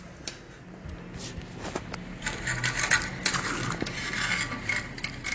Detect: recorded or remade recorded